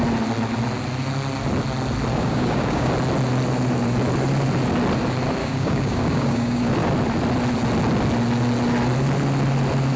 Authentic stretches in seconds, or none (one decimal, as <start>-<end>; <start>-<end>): 0.0-2.1; 2.9-5.4; 6.7-10.0

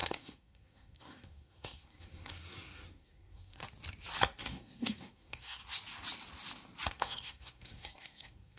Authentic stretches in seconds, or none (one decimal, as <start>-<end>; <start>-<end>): 3.6-4.4; 5.6-6.9

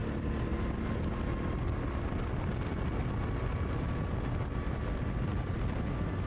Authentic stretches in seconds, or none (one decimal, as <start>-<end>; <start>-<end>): 0.0-6.3

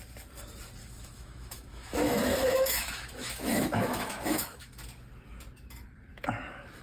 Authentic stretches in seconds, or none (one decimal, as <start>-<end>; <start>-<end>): 0.0-0.8; 4.8-6.8

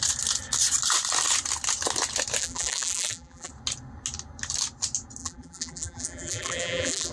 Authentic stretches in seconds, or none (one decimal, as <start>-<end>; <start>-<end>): 0.0-2.4; 3.5-5.2